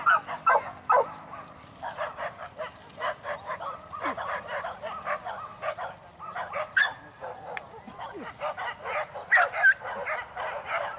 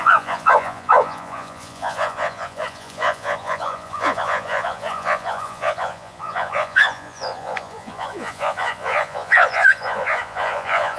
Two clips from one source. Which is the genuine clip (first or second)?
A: first